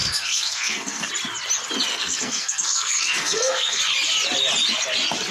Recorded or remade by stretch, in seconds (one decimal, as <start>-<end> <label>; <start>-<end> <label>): 0.0-1.1 remade; 1.1-1.9 recorded; 1.9-3.8 remade; 3.8-5.3 recorded